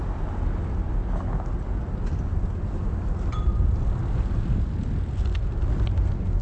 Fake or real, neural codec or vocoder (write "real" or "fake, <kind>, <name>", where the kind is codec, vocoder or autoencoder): real